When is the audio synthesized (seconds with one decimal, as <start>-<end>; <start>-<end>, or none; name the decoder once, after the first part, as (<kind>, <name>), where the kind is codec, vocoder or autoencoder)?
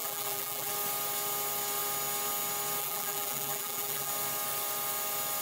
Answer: 0.0-0.7 (vocoder, BigVGAN v2); 2.8-4.1